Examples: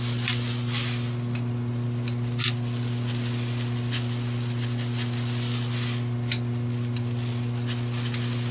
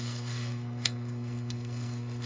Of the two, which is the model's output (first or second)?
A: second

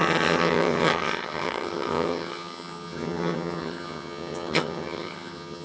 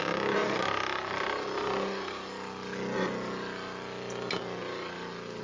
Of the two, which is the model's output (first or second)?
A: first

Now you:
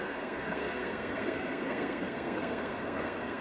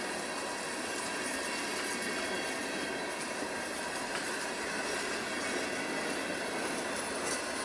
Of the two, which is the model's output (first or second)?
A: first